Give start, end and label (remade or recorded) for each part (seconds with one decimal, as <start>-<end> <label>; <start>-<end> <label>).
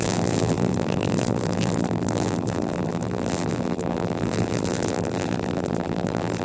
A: 0.0-6.4 remade